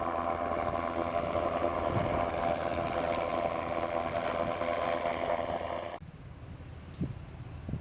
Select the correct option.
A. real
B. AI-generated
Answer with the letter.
A